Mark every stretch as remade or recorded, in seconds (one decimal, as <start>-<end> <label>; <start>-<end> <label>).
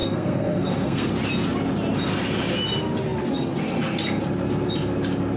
0.0-1.1 remade; 1.1-5.4 recorded